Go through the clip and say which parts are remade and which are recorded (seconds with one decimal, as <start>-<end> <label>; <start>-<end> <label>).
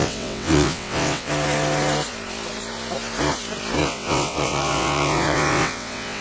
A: 0.0-1.3 remade; 1.3-3.8 recorded; 3.8-6.2 remade